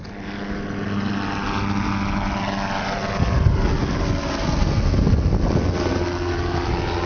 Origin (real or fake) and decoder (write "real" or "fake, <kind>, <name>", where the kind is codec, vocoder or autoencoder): real